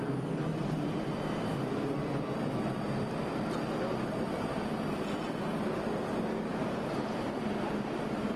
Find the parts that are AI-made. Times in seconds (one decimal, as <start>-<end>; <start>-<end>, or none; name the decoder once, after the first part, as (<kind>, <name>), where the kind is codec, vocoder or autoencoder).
6.5-8.4 (vocoder, BigVGAN v2)